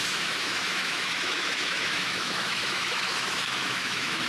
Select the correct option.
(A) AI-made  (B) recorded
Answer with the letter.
A